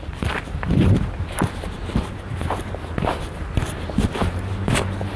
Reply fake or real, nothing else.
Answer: fake